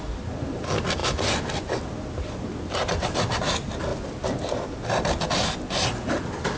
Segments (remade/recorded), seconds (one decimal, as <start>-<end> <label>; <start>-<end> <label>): 0.0-6.6 recorded